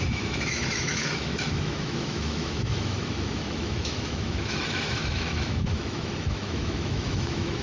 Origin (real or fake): fake